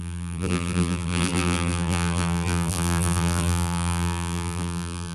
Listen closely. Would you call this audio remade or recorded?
remade